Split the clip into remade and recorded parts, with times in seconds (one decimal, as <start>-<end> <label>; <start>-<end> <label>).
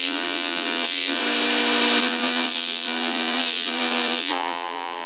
0.0-1.2 remade; 1.2-2.0 recorded; 2.0-5.1 remade